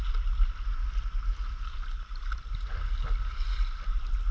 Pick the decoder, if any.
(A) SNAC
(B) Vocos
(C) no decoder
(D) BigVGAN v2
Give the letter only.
C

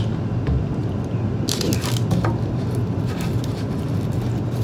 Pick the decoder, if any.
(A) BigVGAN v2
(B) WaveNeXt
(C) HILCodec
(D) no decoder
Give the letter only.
D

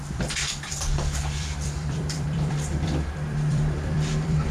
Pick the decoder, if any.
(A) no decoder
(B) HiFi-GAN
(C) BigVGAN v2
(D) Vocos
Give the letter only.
C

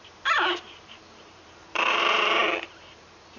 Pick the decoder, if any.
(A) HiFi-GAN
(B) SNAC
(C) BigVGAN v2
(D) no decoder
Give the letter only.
C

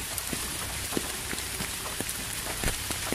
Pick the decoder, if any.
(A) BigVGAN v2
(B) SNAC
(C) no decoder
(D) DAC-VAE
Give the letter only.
A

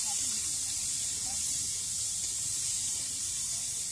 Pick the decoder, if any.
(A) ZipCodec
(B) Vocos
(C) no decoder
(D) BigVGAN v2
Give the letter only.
C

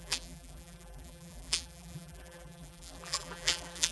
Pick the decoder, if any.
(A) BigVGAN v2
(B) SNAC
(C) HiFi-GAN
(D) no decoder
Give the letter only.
A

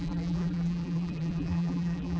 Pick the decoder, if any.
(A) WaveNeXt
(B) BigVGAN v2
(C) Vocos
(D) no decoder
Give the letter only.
B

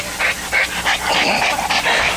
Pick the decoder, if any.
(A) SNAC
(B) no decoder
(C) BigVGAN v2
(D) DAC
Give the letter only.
C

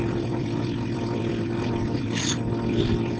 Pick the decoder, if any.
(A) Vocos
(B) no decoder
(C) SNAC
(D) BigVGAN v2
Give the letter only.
D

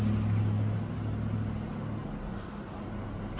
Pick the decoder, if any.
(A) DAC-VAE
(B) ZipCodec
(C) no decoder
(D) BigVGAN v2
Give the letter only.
C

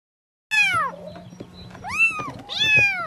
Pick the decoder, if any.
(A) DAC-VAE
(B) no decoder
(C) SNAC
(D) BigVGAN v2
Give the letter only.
B